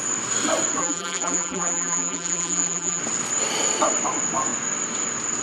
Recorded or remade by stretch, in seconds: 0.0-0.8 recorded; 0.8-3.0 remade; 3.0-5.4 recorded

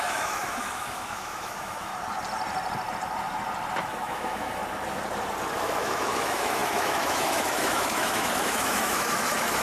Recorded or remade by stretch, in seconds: 0.0-1.9 remade; 1.9-3.8 recorded; 3.8-4.6 remade; 4.6-5.6 recorded; 5.6-9.6 remade

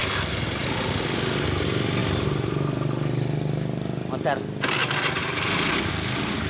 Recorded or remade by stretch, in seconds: 0.0-6.5 recorded

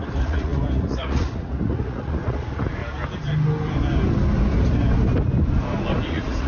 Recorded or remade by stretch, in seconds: 0.0-2.8 remade; 2.8-6.1 recorded; 6.1-6.5 remade